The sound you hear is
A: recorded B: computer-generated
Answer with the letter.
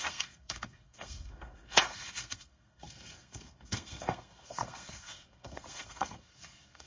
B